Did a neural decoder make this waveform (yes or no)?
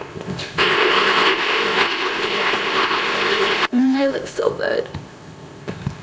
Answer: yes